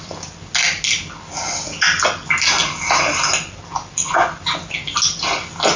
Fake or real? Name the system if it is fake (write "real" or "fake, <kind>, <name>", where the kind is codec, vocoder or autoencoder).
real